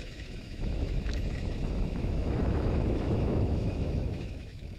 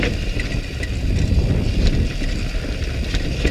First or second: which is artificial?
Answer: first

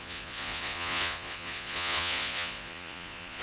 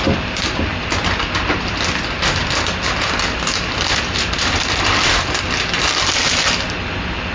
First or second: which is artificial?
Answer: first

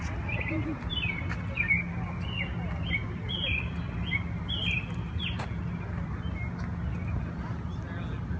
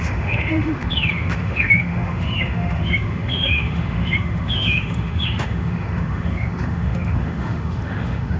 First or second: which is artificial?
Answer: second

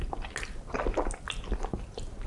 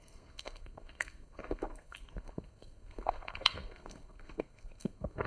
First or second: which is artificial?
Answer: second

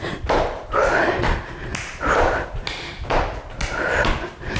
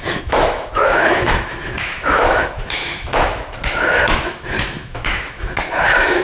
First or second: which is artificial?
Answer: second